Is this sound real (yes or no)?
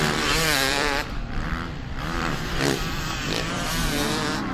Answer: no